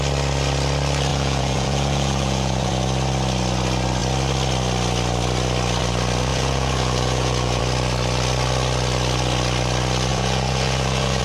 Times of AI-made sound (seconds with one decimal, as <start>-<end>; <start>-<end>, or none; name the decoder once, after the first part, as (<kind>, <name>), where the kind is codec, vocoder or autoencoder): 1.1-2.7 (vocoder, Vocos); 6.3-7.6; 10.1-11.2